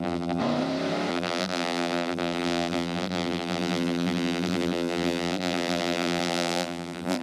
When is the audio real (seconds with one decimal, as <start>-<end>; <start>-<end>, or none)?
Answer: 0.4-1.1